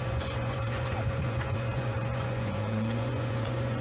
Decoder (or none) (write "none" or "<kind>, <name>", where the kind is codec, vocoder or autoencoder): vocoder, Vocos